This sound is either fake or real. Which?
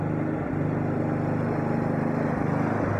real